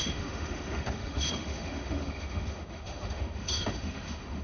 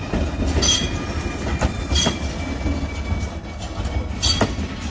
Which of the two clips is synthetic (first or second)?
first